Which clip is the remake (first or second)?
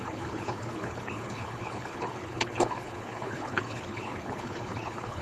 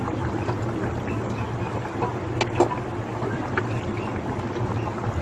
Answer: first